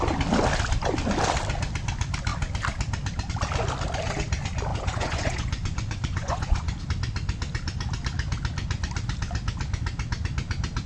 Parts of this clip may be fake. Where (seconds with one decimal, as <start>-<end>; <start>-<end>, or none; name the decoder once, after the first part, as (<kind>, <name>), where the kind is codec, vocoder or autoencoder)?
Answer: 4.7-6.8 (vocoder, Vocos)